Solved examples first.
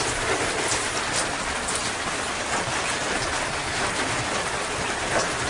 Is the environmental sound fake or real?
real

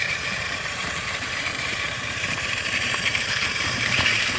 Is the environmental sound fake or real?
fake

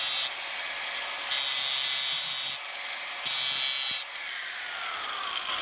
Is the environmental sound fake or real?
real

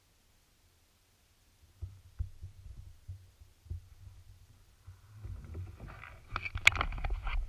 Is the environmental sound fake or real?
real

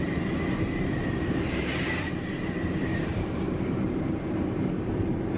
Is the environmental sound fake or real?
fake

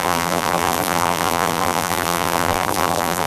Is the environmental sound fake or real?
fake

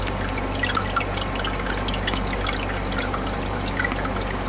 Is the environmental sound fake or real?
real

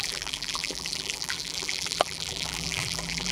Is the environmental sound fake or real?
fake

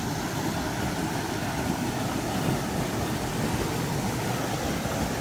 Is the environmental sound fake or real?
real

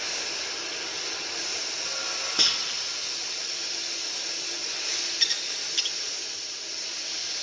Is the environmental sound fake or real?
fake